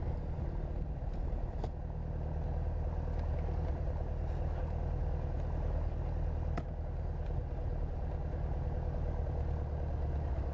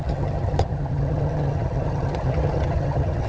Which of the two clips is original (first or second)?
first